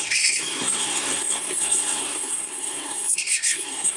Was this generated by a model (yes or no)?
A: yes